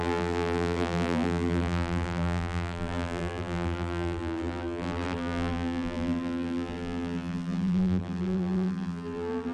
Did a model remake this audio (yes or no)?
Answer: yes